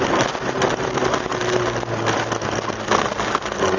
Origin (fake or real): real